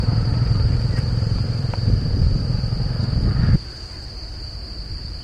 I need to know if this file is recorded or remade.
remade